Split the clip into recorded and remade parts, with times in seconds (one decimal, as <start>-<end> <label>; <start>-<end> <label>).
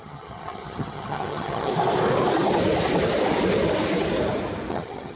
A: 0.0-1.7 remade; 1.7-4.7 recorded; 4.7-5.2 remade